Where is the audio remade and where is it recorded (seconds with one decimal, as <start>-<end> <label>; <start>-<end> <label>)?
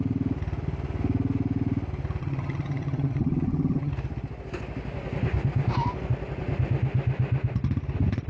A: 0.0-2.2 recorded; 2.2-3.9 remade; 3.9-8.3 recorded